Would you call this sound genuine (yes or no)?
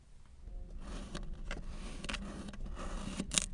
yes